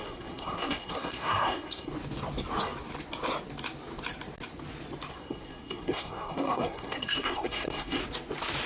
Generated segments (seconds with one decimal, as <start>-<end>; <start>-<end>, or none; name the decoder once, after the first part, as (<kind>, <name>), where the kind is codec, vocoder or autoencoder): 0.0-1.9 (codec, SNAC); 5.1-8.0